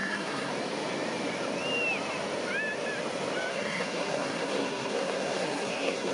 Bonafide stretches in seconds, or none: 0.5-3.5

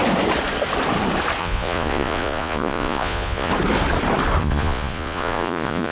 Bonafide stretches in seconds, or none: 0.0-1.4; 3.5-4.4

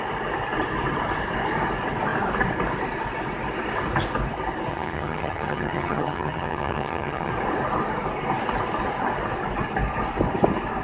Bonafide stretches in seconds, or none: 0.0-4.7; 7.3-10.8

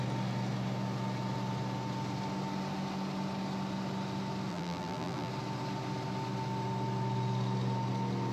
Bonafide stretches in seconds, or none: 0.0-4.5; 5.3-8.3

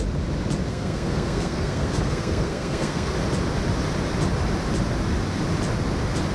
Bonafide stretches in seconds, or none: 0.0-0.7; 3.1-6.3

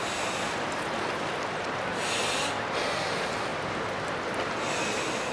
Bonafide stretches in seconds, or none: 0.0-5.3

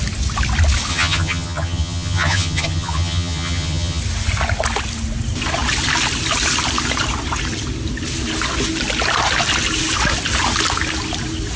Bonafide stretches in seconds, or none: 0.0-0.9; 4.0-11.6

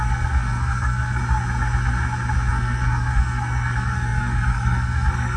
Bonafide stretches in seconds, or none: 1.2-2.5